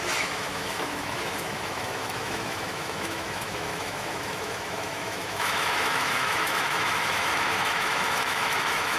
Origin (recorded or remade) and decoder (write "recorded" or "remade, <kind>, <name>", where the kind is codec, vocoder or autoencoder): remade, autoencoder, DAC-VAE